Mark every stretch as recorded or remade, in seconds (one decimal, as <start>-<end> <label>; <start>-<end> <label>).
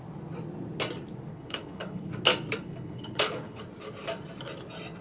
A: 0.0-1.3 recorded; 1.3-2.1 remade; 2.1-2.6 recorded; 2.6-3.6 remade; 3.6-5.0 recorded